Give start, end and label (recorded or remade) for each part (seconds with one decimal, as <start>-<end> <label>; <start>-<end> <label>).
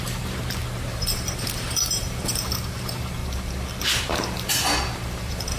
0.0-3.2 remade; 3.2-4.0 recorded; 4.0-5.6 remade